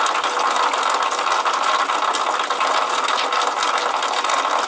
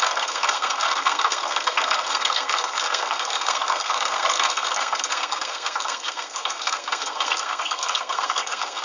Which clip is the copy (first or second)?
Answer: second